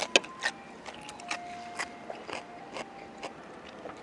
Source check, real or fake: real